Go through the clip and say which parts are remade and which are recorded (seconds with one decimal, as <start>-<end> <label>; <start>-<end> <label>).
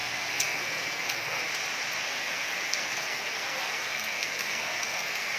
0.0-1.4 remade; 1.4-2.0 recorded; 2.0-5.4 remade